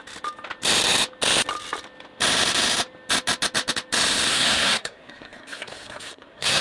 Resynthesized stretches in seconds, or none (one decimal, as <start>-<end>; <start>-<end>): 4.3-6.6